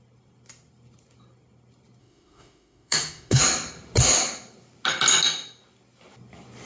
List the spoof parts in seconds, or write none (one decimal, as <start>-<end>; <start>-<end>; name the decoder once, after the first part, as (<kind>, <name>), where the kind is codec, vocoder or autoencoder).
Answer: 2.0-3.4 (autoencoder, DAC-VAE)